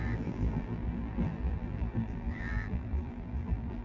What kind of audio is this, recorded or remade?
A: remade